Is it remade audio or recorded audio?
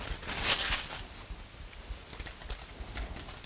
recorded